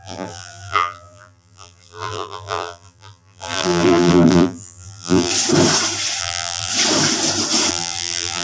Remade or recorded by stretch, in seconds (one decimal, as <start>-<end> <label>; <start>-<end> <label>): 0.0-5.3 remade; 5.3-6.2 recorded; 6.2-6.7 remade; 6.7-7.7 recorded; 7.7-8.4 remade

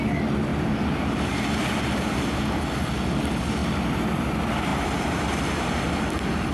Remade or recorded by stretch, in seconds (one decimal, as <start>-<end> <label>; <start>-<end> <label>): 0.0-0.5 recorded; 0.5-2.6 remade; 2.6-3.6 recorded; 3.6-4.2 remade; 4.2-4.7 recorded; 4.7-6.0 remade; 6.0-6.5 recorded

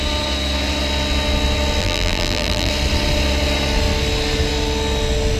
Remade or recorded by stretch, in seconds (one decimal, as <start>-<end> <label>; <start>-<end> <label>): 0.0-1.8 recorded; 1.8-2.7 remade; 2.7-5.4 recorded

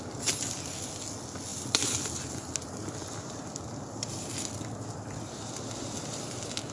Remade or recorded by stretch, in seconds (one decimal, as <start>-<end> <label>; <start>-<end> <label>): 0.0-1.5 recorded; 1.5-2.2 remade; 2.2-3.0 recorded; 3.0-6.3 remade; 6.3-6.7 recorded

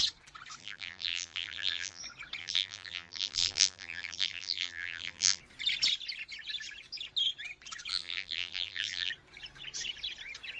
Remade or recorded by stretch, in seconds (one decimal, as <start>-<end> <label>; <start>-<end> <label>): 0.0-0.6 recorded; 0.6-2.0 remade; 2.0-2.4 recorded; 2.4-5.4 remade; 5.4-7.9 recorded; 7.9-9.1 remade; 9.1-10.6 recorded

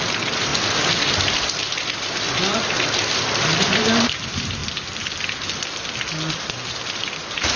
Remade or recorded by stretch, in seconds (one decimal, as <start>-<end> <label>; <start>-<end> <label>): 0.0-0.5 remade; 0.5-3.6 recorded; 3.6-4.6 remade; 4.6-6.3 recorded; 6.3-7.6 remade

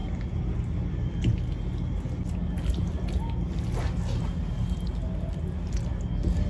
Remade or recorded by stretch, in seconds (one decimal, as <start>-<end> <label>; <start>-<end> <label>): 0.0-6.5 recorded